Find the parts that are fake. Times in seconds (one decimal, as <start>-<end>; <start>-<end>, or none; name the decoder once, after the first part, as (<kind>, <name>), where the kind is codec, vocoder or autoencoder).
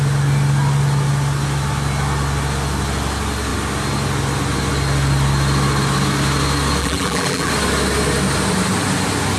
6.8-7.5 (vocoder, BigVGAN v2)